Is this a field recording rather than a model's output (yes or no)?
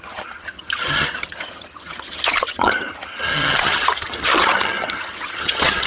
no